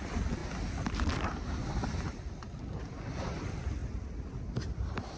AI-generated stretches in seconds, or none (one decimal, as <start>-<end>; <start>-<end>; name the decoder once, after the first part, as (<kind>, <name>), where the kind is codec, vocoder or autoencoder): none